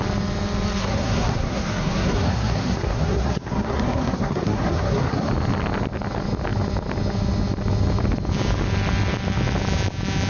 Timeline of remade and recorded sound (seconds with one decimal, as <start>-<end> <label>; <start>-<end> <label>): 0.0-0.8 recorded; 0.8-5.3 remade; 5.3-10.3 recorded